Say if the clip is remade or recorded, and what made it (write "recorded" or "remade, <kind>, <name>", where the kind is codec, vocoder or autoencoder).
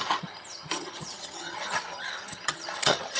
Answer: remade, vocoder, HiFi-GAN